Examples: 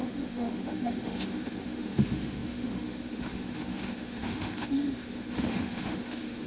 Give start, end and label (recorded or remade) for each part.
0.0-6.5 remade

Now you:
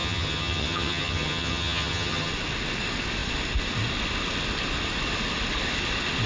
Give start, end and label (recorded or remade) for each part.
0.0-2.3 remade; 2.3-6.3 recorded

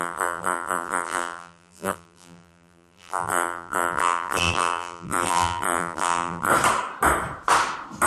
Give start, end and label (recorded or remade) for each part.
0.0-6.5 remade; 6.5-8.1 recorded

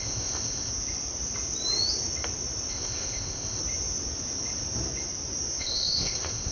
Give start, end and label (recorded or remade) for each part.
0.0-0.7 remade; 0.7-2.7 recorded; 2.7-3.6 remade; 3.6-5.6 recorded; 5.6-6.5 remade

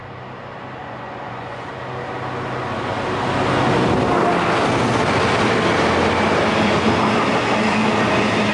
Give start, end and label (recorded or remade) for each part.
0.0-0.8 recorded; 0.8-1.8 remade; 1.8-8.5 recorded

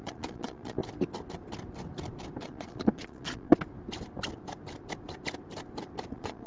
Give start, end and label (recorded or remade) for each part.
0.0-0.8 remade; 0.8-2.4 recorded; 2.4-3.5 remade; 3.5-6.1 recorded; 6.1-6.5 remade